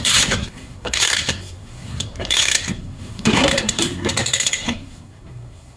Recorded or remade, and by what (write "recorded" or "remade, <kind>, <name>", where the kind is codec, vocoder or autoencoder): remade, codec, SNAC